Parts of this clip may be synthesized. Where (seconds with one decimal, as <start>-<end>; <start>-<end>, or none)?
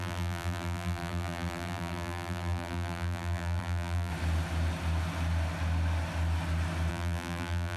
0.0-4.1; 6.9-7.8